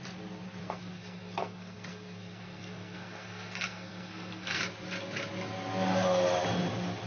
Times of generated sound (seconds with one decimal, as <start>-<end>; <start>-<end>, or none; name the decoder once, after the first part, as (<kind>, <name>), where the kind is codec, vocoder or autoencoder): 0.6-4.6 (codec, SNAC)